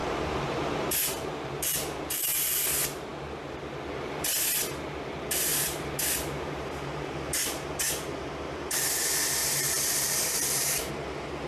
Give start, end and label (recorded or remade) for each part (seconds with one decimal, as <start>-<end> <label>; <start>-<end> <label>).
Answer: 0.0-2.3 remade; 2.3-5.5 recorded; 5.5-8.8 remade; 8.8-9.4 recorded; 9.4-10.9 remade; 10.9-11.5 recorded